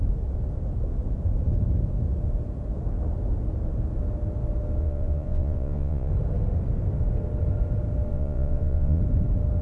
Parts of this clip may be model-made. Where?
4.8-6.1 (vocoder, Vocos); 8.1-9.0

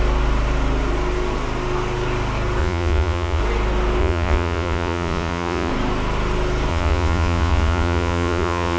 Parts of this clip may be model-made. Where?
2.6-3.4 (vocoder, Vocos); 4.0-5.7; 6.7-8.8

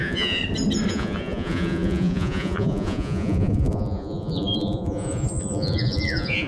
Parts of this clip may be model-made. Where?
0.0-0.4 (vocoder, Vocos); 0.9-6.5

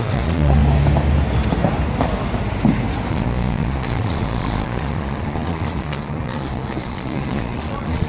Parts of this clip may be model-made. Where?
0.0-0.6 (vocoder, Vocos); 3.1-8.1

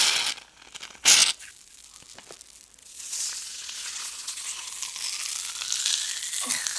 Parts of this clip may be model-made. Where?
2.8-4.7 (vocoder, Vocos)